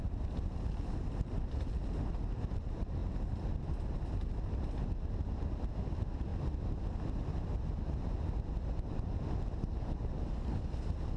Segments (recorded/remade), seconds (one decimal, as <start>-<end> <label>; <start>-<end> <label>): 0.0-9.7 recorded; 9.7-10.7 remade; 10.7-11.2 recorded